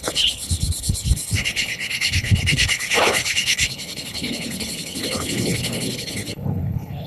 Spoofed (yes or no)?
yes